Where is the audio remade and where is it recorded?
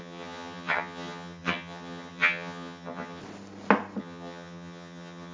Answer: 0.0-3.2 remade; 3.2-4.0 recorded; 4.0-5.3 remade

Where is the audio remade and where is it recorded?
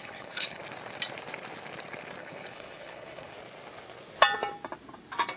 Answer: 0.0-0.6 remade; 0.6-2.2 recorded; 2.2-3.3 remade; 3.3-5.4 recorded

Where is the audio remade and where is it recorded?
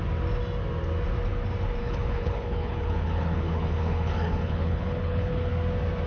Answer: 0.0-1.8 recorded; 1.8-5.5 remade; 5.5-6.1 recorded